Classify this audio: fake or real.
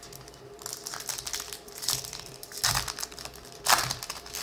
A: real